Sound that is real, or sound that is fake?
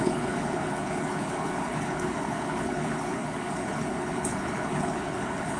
fake